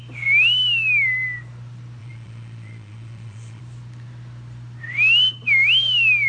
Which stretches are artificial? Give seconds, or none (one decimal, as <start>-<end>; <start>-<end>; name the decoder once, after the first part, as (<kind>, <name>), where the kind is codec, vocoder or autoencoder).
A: 2.0-3.6 (vocoder, Vocos)